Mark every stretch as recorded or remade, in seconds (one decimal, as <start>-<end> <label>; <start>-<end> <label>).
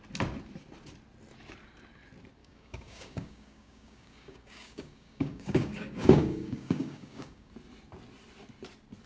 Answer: 0.0-2.4 recorded; 2.4-7.5 remade; 7.5-9.1 recorded